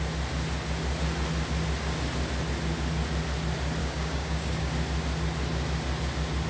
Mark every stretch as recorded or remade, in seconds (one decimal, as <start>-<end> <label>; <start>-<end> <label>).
0.0-3.8 recorded; 3.8-4.7 remade; 4.7-6.5 recorded